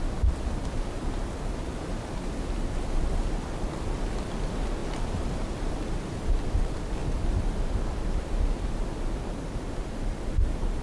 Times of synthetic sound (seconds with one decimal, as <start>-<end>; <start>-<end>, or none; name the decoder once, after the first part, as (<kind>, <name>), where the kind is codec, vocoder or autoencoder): 0.0-7.0 (vocoder, BigVGAN v2); 9.4-10.8